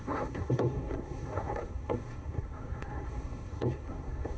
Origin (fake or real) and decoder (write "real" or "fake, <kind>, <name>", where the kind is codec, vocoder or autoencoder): fake, codec, SNAC